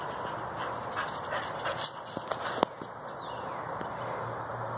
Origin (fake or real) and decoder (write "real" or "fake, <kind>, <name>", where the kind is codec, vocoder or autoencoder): real